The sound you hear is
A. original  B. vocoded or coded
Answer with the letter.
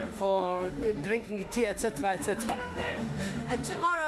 B